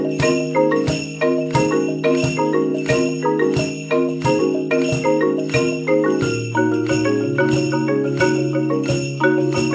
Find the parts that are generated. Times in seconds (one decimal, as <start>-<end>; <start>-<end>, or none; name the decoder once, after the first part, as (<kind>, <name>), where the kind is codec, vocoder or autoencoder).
none